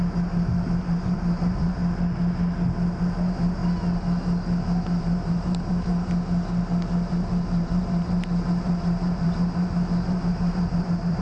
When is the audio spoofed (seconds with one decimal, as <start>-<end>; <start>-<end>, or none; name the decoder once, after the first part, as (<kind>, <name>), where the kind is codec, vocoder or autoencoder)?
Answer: 0.0-1.8 (vocoder, BigVGAN v2); 3.0-3.6; 5.0-5.9; 7.1-11.2